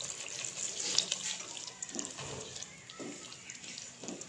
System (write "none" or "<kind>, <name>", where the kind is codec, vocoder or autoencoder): none